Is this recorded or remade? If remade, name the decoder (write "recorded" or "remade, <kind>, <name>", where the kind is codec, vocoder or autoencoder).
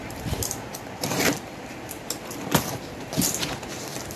remade, vocoder, BigVGAN v2